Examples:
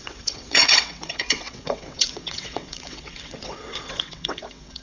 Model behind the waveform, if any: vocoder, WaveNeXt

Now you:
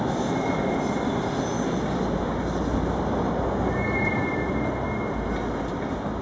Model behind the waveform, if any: none